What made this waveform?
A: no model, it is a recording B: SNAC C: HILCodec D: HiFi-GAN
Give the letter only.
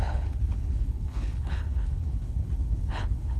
C